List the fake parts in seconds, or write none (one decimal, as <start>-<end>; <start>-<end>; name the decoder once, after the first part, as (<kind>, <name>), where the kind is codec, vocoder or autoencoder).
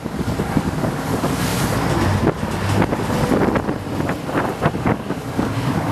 0.0-1.5 (codec, DAC); 4.7-5.9